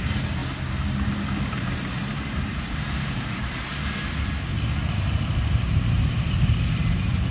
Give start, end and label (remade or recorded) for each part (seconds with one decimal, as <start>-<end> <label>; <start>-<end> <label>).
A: 0.0-0.4 remade; 0.4-1.4 recorded; 1.4-3.7 remade; 3.7-5.5 recorded; 5.5-7.3 remade